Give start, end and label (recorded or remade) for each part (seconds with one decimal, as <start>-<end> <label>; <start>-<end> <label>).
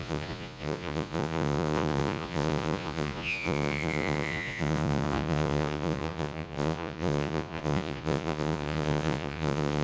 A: 0.0-9.8 remade